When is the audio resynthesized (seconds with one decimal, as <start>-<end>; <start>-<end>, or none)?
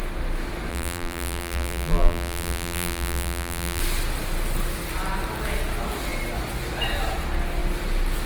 0.7-3.8